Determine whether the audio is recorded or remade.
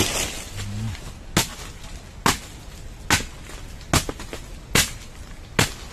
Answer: recorded